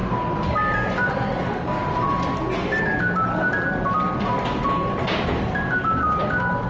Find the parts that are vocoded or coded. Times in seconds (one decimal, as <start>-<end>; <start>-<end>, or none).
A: none